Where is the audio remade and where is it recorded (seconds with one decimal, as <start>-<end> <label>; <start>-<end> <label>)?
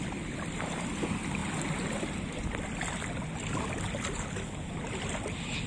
0.0-5.7 recorded